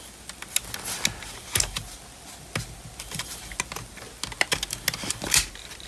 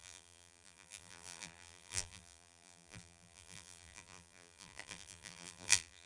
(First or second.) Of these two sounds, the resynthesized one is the second